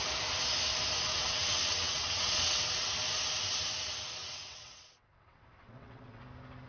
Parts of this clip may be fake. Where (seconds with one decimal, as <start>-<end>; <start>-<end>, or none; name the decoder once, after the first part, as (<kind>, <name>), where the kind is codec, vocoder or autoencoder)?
1.1-2.9 (vocoder, WaveNeXt); 4.2-6.2